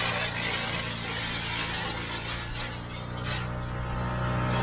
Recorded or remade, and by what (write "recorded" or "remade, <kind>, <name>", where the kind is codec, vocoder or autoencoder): recorded